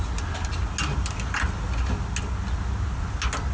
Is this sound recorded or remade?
recorded